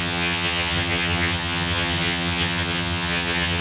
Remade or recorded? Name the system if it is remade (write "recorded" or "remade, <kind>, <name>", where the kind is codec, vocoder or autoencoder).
remade, vocoder, HiFi-GAN